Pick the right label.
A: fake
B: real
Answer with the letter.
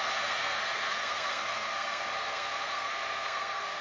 A